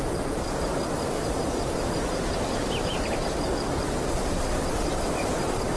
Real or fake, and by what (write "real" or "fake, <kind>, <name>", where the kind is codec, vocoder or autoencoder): fake, vocoder, BigVGAN v2